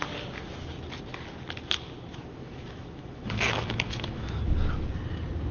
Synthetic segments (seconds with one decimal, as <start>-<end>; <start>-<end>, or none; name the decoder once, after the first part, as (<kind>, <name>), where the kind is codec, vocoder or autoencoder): 2.1-4.4 (autoencoder, DAC-VAE)